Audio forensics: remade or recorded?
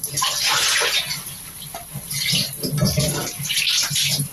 recorded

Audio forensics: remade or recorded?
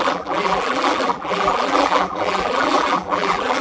remade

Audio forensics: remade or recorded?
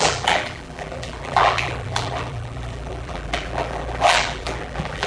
remade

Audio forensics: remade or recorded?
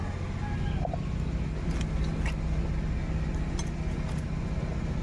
recorded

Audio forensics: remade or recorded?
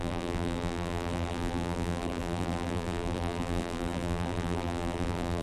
remade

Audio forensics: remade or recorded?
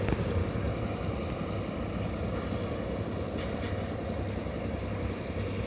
recorded